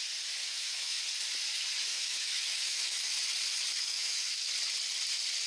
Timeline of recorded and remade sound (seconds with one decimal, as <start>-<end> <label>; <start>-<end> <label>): 0.0-0.4 recorded; 0.4-1.0 remade; 1.0-1.9 recorded; 1.9-3.0 remade; 3.0-3.9 recorded; 3.9-4.5 remade; 4.5-5.5 recorded

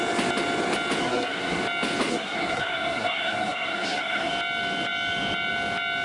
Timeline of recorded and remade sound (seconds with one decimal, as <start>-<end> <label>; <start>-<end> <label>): 0.0-1.0 recorded; 1.0-1.6 remade; 1.6-2.1 recorded; 2.1-4.3 remade; 4.3-6.0 recorded